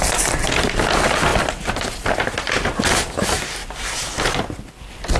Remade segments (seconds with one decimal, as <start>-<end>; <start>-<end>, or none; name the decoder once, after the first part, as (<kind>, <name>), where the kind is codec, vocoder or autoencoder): none